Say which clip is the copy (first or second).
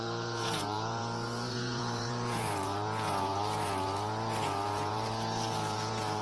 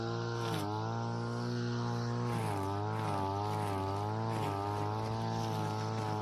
first